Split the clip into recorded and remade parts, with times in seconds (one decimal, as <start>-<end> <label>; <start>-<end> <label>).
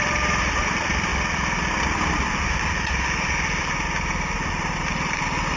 0.0-1.1 remade; 1.1-4.5 recorded; 4.5-5.6 remade